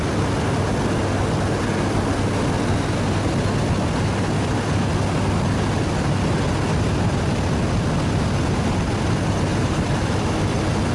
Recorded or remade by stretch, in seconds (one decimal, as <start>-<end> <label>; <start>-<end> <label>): 0.0-9.5 recorded; 9.5-10.1 remade; 10.1-10.9 recorded